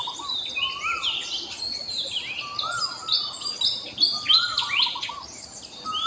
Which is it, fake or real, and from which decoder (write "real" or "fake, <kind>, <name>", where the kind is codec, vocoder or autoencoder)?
real